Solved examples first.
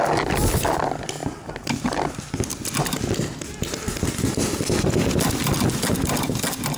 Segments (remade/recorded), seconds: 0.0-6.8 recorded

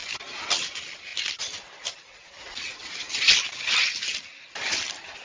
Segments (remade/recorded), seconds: 0.0-5.2 recorded